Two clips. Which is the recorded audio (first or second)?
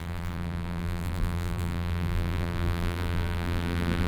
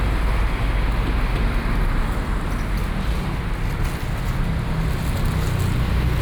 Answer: second